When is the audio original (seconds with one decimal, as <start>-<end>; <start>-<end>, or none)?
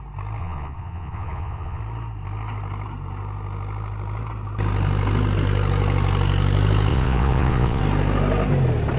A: 0.0-0.4; 1.8-6.9; 7.8-9.0